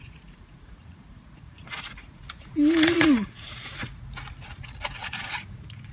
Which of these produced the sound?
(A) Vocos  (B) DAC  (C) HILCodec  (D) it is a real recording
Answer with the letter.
A